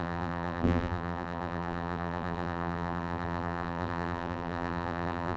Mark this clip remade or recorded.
remade